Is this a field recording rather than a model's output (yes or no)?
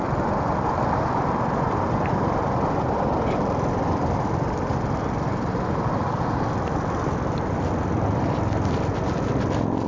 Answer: no